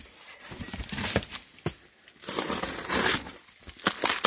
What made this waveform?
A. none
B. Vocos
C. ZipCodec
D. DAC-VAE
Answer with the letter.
A